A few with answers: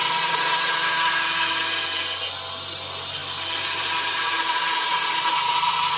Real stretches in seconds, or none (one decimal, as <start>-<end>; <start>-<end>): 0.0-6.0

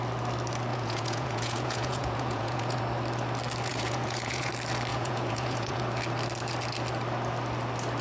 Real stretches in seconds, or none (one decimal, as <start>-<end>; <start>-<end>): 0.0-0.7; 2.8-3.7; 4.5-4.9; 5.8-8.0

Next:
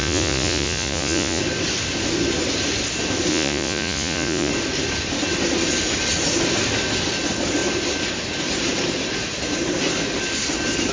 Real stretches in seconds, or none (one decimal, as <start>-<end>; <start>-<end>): 1.4-3.3; 4.5-10.9